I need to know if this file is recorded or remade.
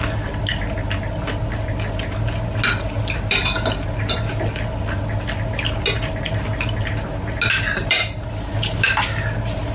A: recorded